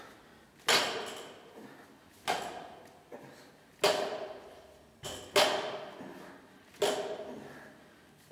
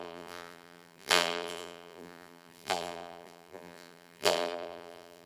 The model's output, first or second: second